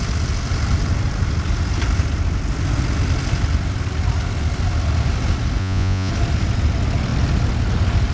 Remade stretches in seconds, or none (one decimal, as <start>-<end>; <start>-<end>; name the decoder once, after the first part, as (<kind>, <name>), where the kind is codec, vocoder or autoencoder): 5.6-6.1 (vocoder, Vocos)